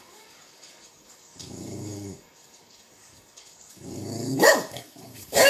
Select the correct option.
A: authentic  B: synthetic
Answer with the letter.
B